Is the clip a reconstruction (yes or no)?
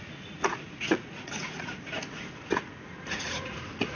yes